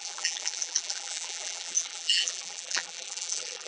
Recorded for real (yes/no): no